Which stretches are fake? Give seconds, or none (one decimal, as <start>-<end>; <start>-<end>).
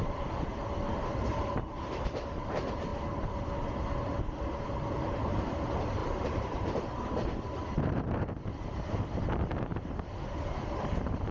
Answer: 0.0-0.5; 1.3-2.9; 5.2-11.3